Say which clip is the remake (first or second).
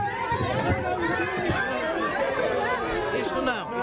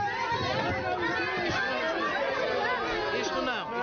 first